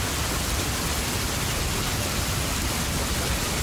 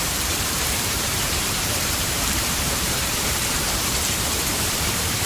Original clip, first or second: first